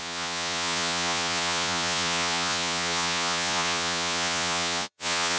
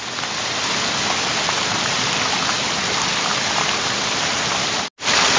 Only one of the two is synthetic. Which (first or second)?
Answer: first